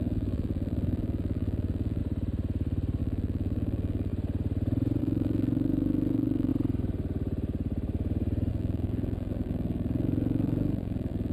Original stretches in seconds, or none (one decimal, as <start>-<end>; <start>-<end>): 2.0-3.0; 4.1-5.0; 6.5-8.5